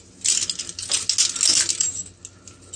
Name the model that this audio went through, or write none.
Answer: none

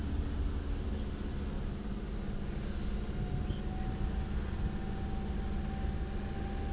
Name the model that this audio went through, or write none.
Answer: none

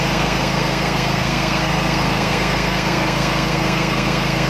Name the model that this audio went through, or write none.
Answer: codec, SNAC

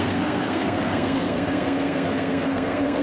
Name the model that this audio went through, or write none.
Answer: codec, SNAC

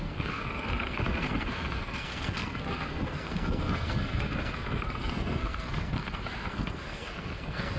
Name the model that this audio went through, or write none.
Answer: codec, SNAC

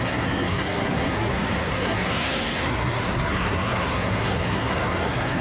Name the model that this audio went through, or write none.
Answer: codec, SNAC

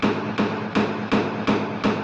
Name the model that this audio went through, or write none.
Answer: none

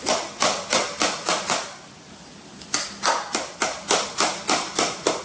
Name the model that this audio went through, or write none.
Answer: none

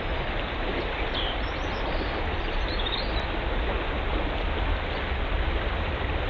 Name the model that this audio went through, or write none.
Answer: none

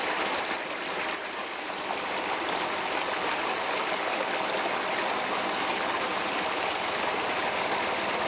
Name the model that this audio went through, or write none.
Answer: none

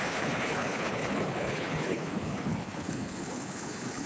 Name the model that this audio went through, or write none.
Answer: codec, HILCodec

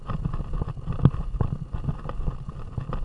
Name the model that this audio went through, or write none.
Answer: none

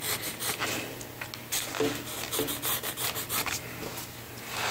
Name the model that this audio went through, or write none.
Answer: none